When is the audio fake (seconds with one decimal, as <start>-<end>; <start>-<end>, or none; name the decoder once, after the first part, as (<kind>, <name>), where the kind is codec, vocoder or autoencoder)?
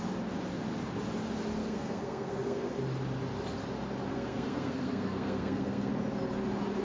1.6-2.8 (codec, SNAC); 4.1-5.9